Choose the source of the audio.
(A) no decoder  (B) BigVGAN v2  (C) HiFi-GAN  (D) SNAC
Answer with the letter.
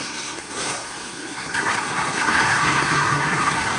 D